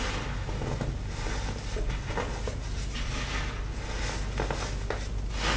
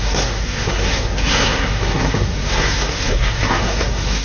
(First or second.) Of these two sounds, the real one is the first